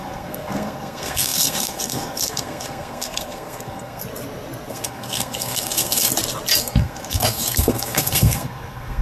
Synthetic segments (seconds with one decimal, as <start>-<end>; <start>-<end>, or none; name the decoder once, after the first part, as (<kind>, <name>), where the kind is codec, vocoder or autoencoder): 0.0-4.0 (codec, SNAC); 4.7-6.1; 6.6-9.0